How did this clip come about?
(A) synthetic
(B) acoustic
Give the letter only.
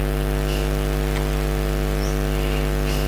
B